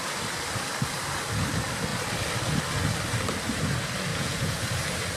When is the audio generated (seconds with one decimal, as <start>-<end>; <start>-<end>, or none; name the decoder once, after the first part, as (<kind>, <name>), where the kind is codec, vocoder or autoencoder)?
4.1-4.7 (vocoder, Vocos)